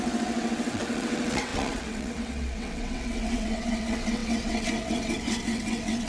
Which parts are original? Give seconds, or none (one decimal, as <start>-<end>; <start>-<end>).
none